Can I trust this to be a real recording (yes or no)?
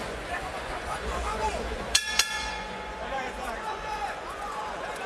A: no